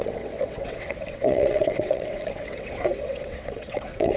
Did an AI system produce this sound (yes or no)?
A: yes